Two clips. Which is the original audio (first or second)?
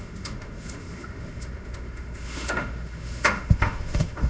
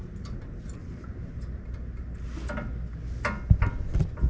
second